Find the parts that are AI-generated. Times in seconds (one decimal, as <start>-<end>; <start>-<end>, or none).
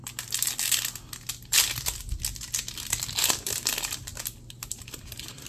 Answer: 3.3-4.1; 5.0-5.5